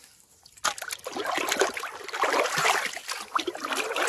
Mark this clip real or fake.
real